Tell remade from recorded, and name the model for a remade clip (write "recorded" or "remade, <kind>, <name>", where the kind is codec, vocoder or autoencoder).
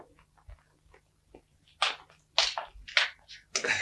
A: recorded